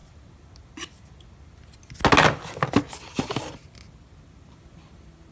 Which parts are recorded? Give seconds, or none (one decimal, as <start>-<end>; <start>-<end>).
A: 0.0-5.3